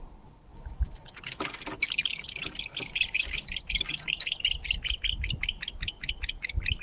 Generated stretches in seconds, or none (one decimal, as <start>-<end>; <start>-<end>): 0.5-1.2